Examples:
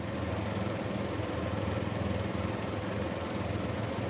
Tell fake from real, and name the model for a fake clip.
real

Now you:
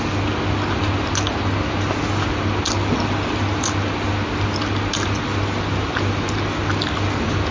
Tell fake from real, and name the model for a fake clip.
real